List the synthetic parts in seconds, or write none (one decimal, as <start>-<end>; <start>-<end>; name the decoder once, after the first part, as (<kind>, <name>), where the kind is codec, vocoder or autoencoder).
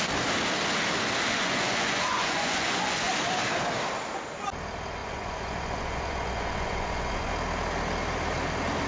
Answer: 1.3-3.1 (vocoder, Vocos); 5.0-7.3